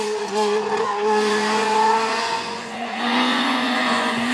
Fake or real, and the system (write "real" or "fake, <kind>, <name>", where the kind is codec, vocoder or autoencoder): fake, vocoder, Vocos